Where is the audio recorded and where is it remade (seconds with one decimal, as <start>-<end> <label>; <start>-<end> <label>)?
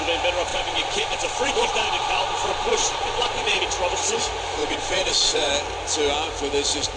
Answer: 0.0-0.5 recorded; 0.5-3.6 remade; 3.6-4.6 recorded; 4.6-5.5 remade; 5.5-7.0 recorded